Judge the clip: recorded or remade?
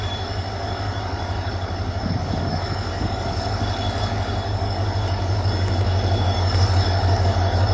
remade